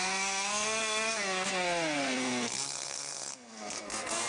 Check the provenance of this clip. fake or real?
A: fake